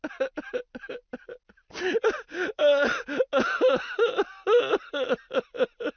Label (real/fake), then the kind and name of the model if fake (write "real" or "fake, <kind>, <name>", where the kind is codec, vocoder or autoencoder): real